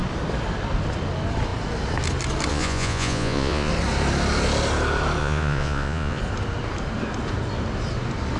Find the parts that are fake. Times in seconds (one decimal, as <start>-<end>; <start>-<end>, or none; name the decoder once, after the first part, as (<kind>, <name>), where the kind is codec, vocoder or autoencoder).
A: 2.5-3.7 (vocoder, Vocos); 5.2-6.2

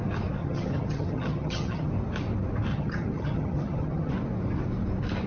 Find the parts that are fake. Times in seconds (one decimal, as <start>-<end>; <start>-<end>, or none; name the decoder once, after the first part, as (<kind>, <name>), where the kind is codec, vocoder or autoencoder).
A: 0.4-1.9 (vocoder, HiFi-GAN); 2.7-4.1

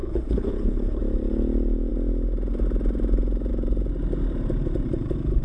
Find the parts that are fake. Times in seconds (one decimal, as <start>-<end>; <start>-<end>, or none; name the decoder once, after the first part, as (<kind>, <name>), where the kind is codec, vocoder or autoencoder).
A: 0.0-1.0 (codec, HILCodec)